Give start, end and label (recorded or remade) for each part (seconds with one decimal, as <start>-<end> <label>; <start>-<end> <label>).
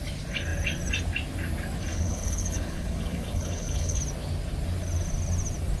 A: 0.0-1.9 recorded; 1.9-4.0 remade; 4.0-5.8 recorded